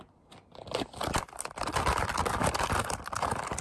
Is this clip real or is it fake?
real